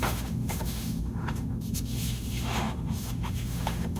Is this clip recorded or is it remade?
remade